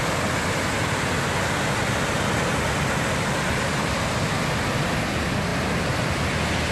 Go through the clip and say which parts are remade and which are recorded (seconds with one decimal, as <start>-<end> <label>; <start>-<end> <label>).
0.0-6.7 recorded